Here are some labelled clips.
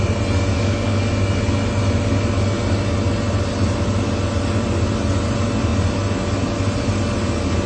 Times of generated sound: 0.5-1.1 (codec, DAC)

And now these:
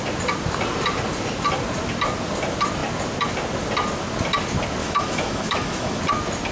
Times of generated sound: 4.8-6.0 (autoencoder, DAC-VAE)

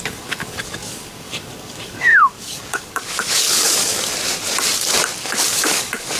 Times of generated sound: 0.0-4.1 (codec, DAC); 5.2-6.2

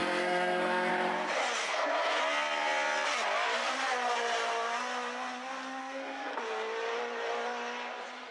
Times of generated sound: 0.0-0.9 (codec, SNAC); 1.6-2.2; 5.8-6.4

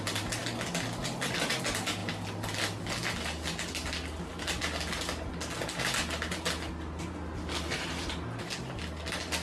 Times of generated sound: 0.4-1.5 (vocoder, BigVGAN v2)